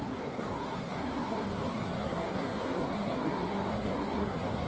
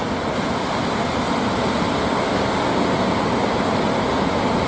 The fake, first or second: first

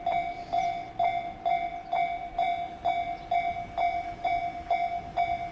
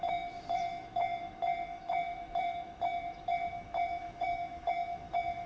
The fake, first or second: second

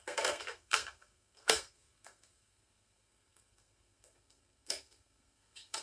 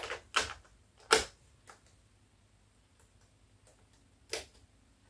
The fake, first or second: first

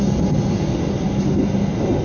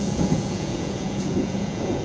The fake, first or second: second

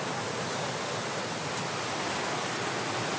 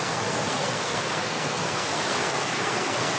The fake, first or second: second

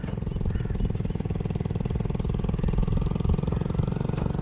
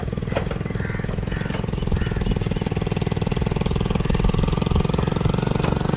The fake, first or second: first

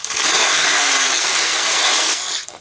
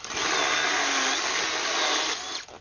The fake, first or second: first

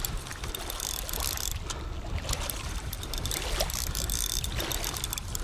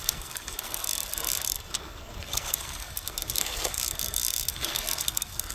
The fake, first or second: second